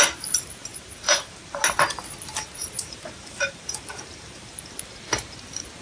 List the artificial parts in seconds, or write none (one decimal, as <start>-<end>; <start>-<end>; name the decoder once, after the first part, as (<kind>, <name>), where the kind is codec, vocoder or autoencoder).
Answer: 0.7-1.6 (vocoder, BigVGAN v2); 2.6-4.6